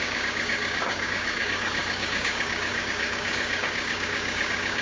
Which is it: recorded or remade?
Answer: remade